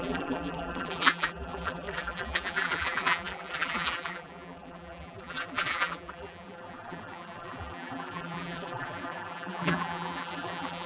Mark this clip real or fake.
fake